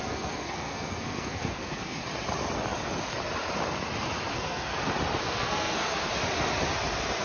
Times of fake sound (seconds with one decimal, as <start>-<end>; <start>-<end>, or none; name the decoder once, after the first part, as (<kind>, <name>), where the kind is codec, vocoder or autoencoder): 0.0-2.0 (codec, SNAC); 4.3-4.7; 5.2-6.1